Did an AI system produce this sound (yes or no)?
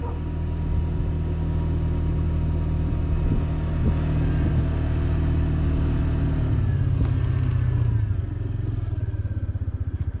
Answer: no